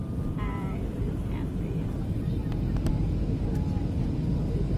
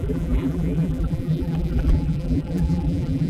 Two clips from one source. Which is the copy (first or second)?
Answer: second